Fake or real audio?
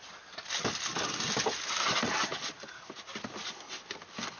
real